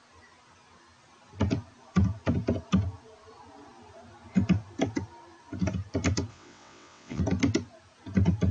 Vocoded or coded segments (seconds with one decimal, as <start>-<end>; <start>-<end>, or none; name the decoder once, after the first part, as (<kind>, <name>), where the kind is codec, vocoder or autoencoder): 6.3-7.2 (vocoder, WaveNeXt)